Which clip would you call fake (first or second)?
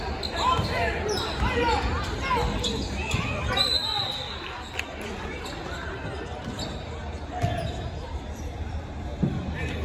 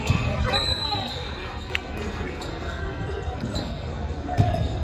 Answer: second